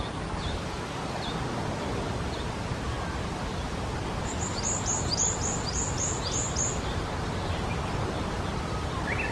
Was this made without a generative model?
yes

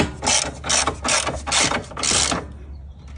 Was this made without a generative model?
yes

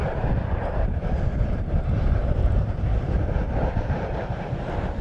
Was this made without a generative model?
no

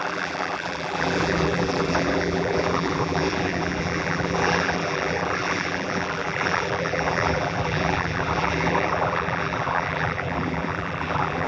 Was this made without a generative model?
no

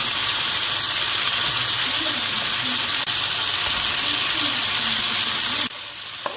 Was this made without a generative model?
yes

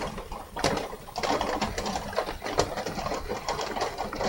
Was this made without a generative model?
yes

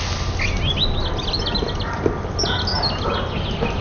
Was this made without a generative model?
yes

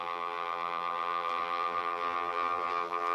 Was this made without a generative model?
no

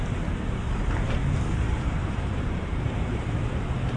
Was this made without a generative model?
no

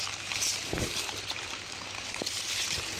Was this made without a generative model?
yes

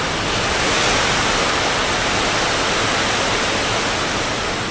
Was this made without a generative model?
yes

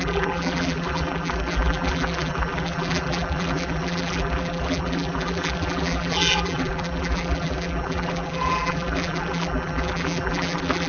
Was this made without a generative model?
no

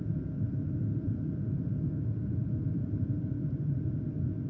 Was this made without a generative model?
no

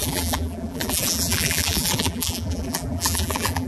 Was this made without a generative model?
no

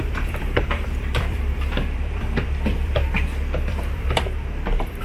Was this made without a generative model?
no